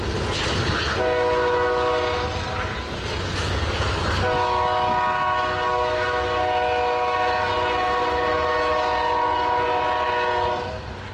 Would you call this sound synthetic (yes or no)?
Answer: no